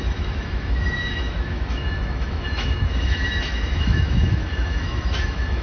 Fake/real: fake